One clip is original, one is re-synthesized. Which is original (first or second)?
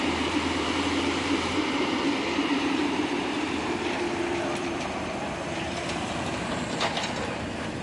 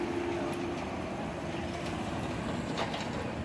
second